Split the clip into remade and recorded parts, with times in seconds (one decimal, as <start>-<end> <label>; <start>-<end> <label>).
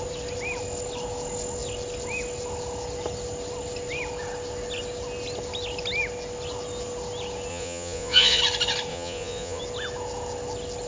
0.0-7.5 recorded; 7.5-8.4 remade; 8.4-8.9 recorded; 8.9-9.6 remade; 9.6-10.9 recorded